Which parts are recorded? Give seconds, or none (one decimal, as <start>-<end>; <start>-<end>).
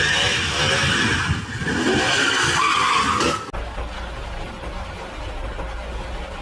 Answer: 0.0-6.4